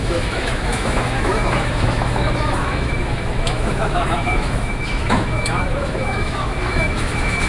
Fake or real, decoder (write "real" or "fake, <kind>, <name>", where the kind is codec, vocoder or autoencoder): fake, autoencoder, DAC-VAE